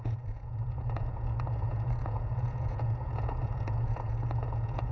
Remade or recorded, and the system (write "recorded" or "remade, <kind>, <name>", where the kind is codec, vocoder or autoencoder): remade, vocoder, Vocos